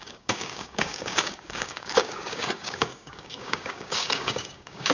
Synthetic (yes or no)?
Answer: yes